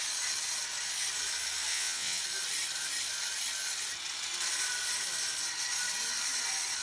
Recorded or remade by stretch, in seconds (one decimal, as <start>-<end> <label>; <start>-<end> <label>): 0.0-1.7 recorded; 1.7-2.2 remade; 2.2-6.8 recorded